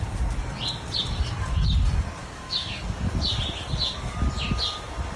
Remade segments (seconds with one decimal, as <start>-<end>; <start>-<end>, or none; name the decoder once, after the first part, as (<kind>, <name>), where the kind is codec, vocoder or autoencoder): 2.2-3.1 (codec, DAC)